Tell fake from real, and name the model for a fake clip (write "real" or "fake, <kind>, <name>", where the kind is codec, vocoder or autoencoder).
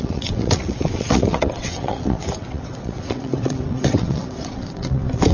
fake, vocoder, WaveNeXt